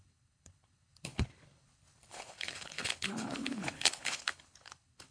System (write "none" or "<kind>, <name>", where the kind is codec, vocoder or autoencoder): codec, HILCodec